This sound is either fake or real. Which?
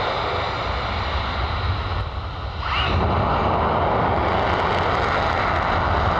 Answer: real